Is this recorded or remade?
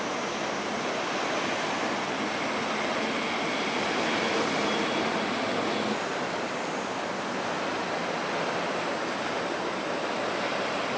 recorded